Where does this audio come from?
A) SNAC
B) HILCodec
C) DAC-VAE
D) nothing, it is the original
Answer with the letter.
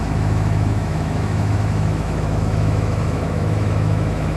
C